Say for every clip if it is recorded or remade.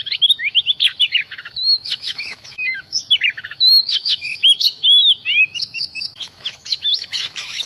remade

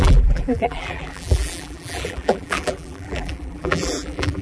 remade